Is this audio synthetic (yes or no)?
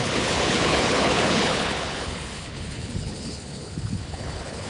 yes